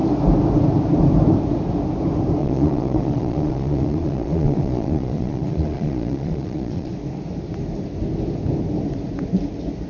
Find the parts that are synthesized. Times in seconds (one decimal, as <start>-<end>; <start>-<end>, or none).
2.4-6.9